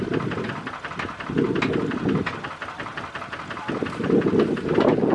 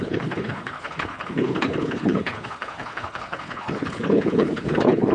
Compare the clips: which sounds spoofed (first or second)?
second